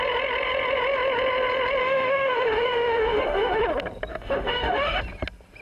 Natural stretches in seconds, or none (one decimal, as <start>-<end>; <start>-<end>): 0.0-1.8; 3.6-4.1; 5.0-5.6